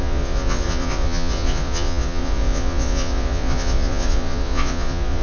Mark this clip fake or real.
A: fake